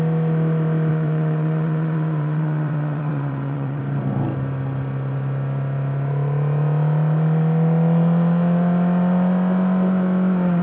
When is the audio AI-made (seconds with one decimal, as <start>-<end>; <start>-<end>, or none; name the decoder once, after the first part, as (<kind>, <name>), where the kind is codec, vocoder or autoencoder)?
0.9-3.8 (vocoder, WaveNeXt)